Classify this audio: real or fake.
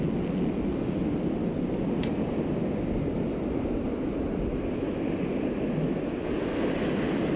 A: real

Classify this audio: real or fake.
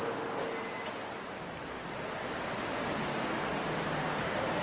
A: real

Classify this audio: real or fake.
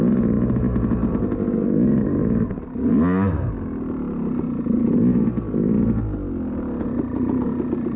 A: real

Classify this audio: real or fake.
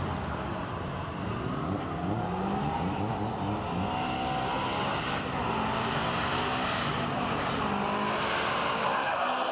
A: real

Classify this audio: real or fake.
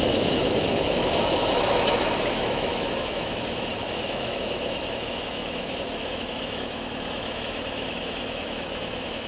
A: fake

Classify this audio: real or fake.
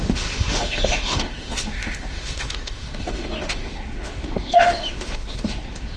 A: fake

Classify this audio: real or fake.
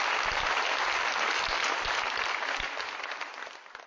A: real